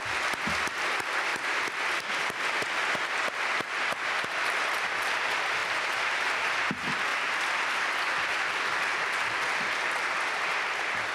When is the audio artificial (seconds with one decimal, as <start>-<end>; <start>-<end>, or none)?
1.3-2.1; 5.6-6.2; 7.1-8.5; 8.9-9.5